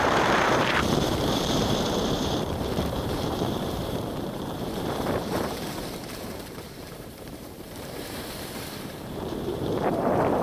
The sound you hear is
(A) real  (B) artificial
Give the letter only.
B